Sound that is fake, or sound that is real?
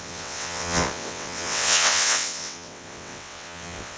fake